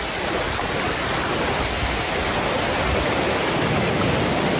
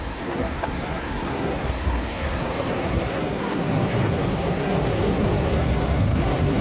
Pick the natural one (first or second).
first